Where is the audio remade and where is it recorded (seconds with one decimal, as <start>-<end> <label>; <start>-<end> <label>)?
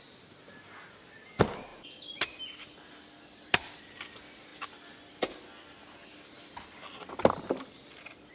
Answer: 0.0-8.3 recorded